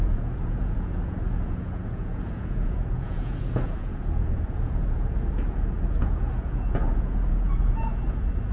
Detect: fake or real fake